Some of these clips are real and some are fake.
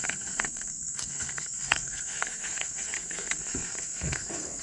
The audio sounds fake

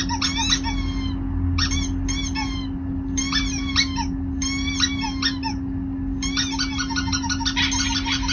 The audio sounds real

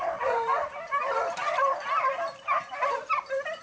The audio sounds fake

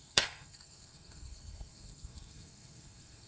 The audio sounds fake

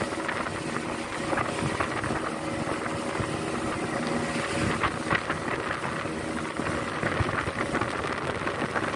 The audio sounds real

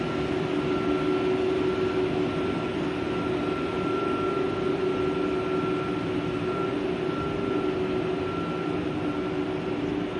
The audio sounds real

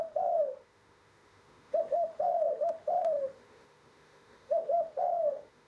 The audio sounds fake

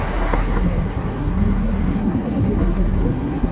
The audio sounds fake